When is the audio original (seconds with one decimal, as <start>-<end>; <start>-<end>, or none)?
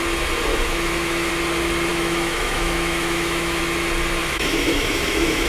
0.0-0.5; 1.3-1.9; 3.6-4.2